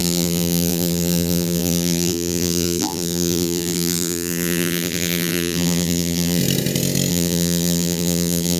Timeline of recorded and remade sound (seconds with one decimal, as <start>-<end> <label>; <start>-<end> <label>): 0.0-6.4 remade; 6.4-7.1 recorded; 7.1-8.6 remade

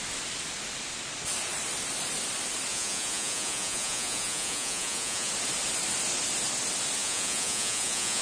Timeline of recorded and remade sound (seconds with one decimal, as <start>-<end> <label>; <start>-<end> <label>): 0.0-2.7 recorded; 2.7-5.3 remade; 5.3-7.0 recorded; 7.0-8.2 remade